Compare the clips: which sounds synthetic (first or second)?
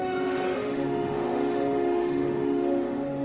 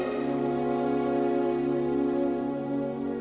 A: first